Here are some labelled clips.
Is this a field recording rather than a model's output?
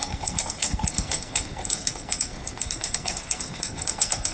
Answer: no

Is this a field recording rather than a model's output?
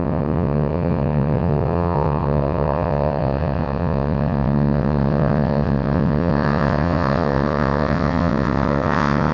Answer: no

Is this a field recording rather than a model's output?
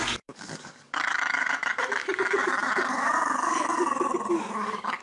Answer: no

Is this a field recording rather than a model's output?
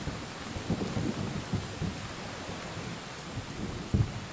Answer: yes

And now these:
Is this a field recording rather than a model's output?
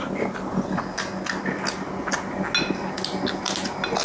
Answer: yes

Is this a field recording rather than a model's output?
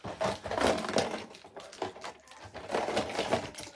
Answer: yes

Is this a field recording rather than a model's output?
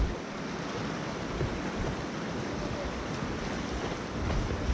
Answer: yes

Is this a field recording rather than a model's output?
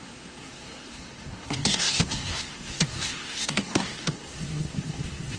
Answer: no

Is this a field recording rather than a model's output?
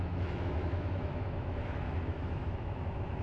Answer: no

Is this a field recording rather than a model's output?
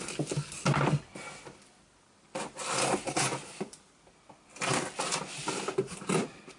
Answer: yes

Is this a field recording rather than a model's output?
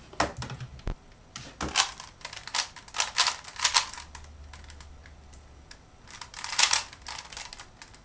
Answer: yes